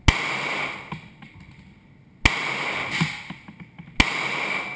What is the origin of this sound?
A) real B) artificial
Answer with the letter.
A